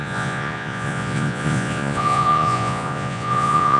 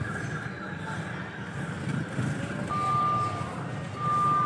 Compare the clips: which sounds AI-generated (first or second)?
first